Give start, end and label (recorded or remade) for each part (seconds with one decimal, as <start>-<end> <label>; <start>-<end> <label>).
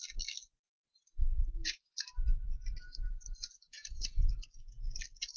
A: 0.0-0.8 recorded; 0.8-4.0 remade; 4.0-5.4 recorded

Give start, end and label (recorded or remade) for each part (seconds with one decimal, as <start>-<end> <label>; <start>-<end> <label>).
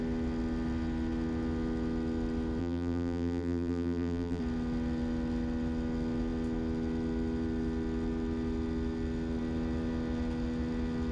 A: 0.0-2.6 recorded; 2.6-4.4 remade; 4.4-11.1 recorded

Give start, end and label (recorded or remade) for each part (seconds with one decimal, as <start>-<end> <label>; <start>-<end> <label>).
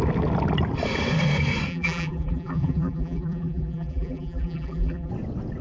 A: 0.0-1.7 recorded; 1.7-5.1 remade; 5.1-5.6 recorded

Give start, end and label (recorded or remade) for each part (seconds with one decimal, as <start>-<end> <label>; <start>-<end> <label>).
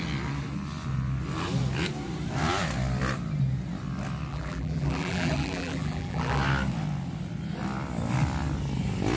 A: 0.0-4.3 recorded; 4.3-6.4 remade; 6.4-9.2 recorded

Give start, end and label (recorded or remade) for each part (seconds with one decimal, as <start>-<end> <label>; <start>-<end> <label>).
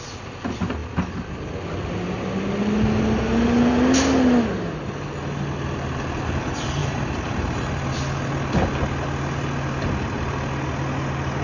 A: 0.0-6.8 recorded; 6.8-7.7 remade; 7.7-11.4 recorded